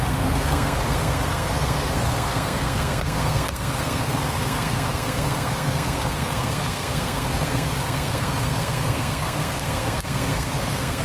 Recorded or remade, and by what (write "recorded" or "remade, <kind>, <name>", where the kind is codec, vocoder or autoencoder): remade, codec, SNAC